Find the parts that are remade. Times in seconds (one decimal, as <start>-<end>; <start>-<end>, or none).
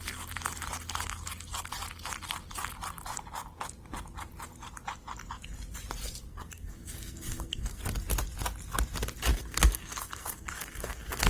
6.3-7.8; 9.3-11.3